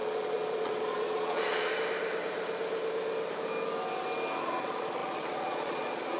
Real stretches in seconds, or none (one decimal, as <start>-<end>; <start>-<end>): 1.7-4.4